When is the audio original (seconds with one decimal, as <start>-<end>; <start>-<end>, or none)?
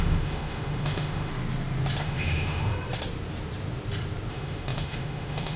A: 1.3-2.0; 2.7-4.3